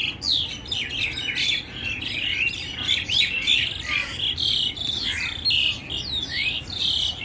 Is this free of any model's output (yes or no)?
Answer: yes